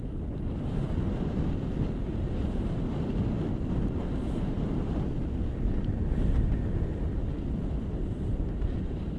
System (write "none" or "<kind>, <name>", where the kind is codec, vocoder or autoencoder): none